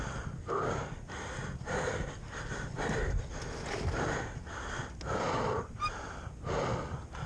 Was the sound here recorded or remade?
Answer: recorded